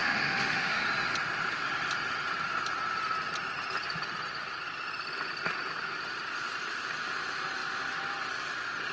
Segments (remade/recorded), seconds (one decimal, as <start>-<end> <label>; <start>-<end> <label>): 0.0-0.8 remade; 0.8-8.9 recorded